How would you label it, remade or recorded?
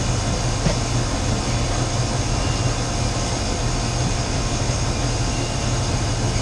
recorded